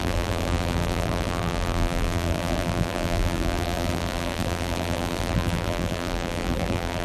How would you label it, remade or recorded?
remade